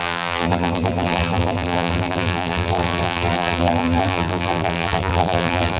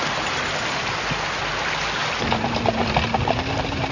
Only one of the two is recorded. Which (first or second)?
second